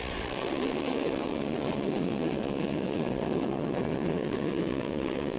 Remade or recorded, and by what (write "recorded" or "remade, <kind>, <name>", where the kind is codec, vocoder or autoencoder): remade, vocoder, WaveNeXt